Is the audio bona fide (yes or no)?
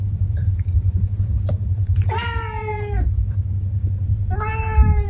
no